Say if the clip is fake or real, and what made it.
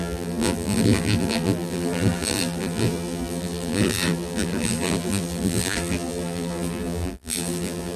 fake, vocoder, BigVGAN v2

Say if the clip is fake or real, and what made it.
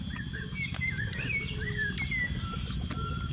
fake, vocoder, BigVGAN v2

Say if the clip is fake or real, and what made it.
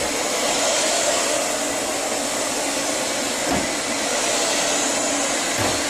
real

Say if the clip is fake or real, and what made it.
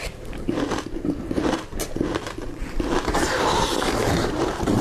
fake, vocoder, BigVGAN v2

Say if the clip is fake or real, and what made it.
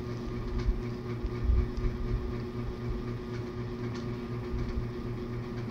real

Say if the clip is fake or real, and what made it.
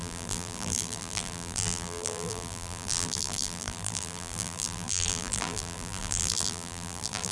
fake, vocoder, BigVGAN v2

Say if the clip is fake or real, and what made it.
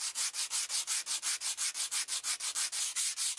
real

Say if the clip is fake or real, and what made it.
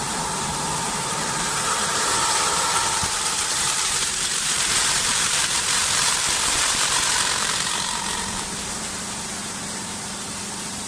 fake, vocoder, BigVGAN v2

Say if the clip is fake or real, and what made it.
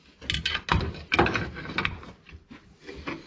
real